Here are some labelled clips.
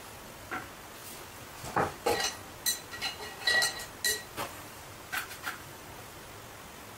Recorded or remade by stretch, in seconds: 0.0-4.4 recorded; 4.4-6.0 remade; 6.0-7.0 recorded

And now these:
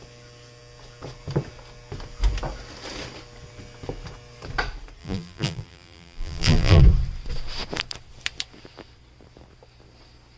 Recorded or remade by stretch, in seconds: 0.0-5.0 recorded; 5.0-6.8 remade; 6.8-10.4 recorded

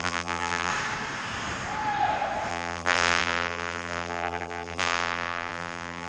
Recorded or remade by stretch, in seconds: 0.0-0.7 remade; 0.7-2.5 recorded; 2.5-6.1 remade

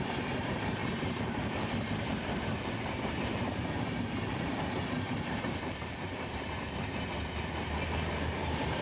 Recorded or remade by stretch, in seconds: 0.0-8.8 remade

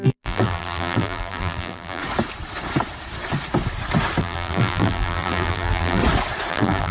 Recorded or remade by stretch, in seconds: 0.0-2.0 remade; 2.0-4.2 recorded; 4.2-6.0 remade; 6.0-6.5 recorded; 6.5-6.9 remade

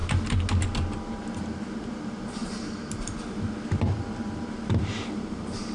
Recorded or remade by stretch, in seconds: 0.0-1.0 recorded; 1.0-5.7 remade